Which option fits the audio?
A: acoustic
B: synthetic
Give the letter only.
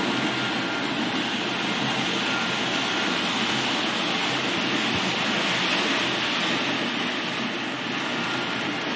A